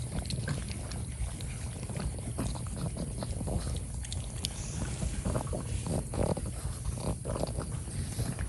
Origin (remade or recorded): recorded